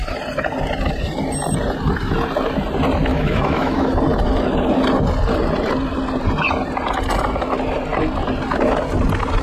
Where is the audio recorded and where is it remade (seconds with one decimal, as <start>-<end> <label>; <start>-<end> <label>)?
0.0-3.1 recorded; 3.1-3.9 remade; 3.9-9.4 recorded